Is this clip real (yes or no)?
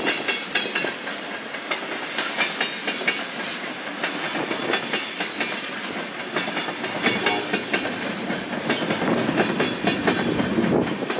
yes